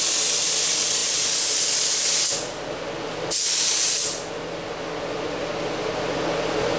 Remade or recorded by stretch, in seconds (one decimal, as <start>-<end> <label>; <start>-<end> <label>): 0.0-6.8 recorded